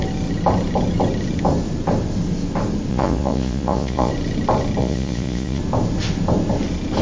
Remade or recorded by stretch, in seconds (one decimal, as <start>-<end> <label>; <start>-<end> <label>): 0.0-2.9 recorded; 2.9-4.1 remade; 4.1-4.8 recorded; 4.8-5.6 remade; 5.6-7.0 recorded